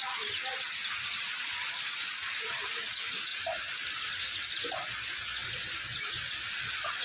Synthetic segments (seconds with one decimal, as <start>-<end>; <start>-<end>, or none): 1.8-3.3